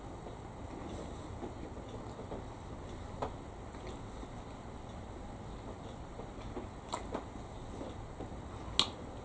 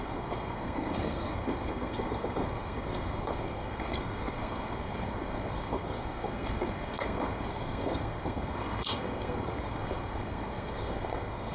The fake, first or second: second